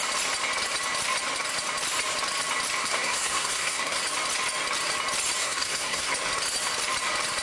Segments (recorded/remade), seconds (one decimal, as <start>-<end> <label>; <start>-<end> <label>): 0.0-2.8 recorded; 2.8-4.0 remade; 4.0-5.4 recorded; 5.4-6.1 remade; 6.1-7.4 recorded